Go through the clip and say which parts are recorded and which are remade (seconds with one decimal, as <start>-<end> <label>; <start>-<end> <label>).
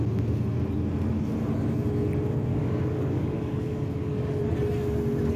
0.0-2.5 recorded; 2.5-4.4 remade; 4.4-5.4 recorded